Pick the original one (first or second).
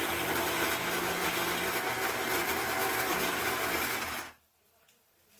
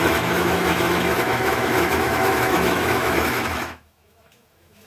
first